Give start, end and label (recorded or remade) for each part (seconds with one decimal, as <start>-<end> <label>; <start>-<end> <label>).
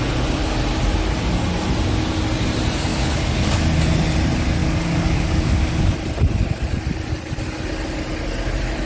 0.0-2.9 recorded; 2.9-3.5 remade; 3.5-4.6 recorded; 4.6-5.9 remade; 5.9-8.9 recorded